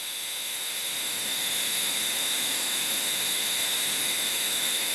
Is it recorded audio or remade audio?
remade